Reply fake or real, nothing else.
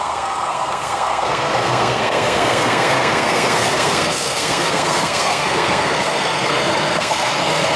fake